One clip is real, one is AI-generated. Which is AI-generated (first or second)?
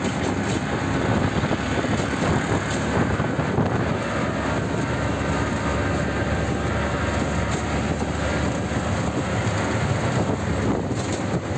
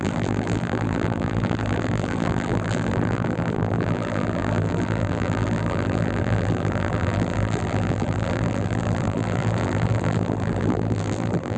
second